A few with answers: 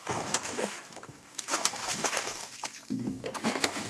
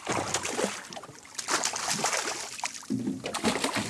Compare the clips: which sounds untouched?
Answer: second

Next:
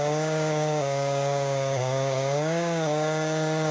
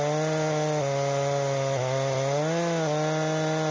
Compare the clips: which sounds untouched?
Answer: second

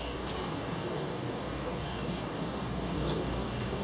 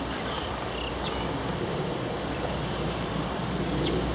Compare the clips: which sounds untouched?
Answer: second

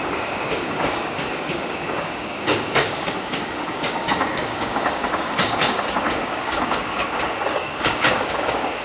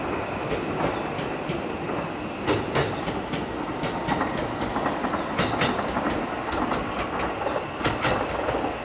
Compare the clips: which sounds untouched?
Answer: second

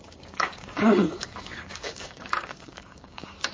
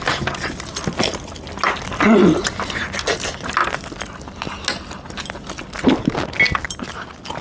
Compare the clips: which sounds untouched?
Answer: second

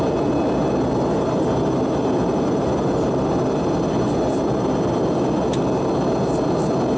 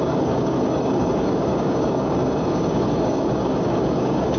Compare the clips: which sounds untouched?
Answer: first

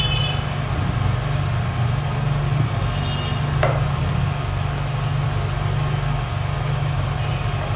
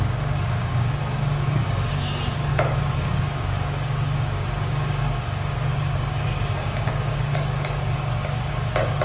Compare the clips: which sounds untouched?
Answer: first